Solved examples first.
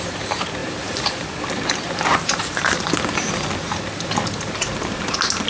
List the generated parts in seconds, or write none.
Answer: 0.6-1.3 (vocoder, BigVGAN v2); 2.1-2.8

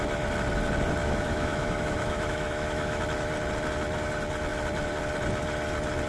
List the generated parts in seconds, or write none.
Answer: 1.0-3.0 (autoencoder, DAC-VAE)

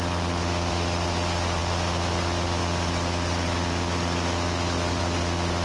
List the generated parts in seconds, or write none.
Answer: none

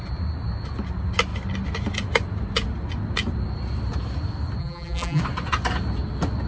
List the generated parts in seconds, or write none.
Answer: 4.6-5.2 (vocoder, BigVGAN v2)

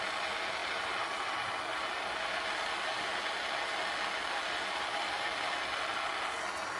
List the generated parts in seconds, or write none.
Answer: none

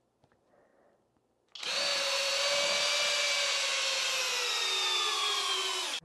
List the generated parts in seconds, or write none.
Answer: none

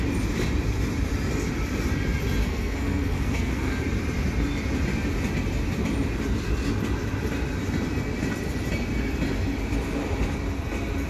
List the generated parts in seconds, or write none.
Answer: 2.4-3.8 (codec, SNAC)

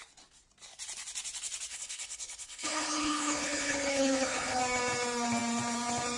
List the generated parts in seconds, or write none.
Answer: 1.7-4.6 (codec, HILCodec)